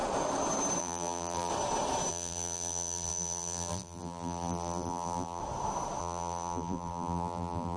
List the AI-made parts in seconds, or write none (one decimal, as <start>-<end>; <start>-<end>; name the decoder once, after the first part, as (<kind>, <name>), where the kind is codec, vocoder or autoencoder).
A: 0.8-1.5 (vocoder, BigVGAN v2); 2.1-5.4; 6.0-7.8